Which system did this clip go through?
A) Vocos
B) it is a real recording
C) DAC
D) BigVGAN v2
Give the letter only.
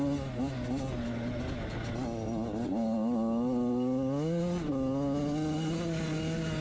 B